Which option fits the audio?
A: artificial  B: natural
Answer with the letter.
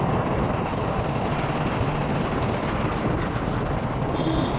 B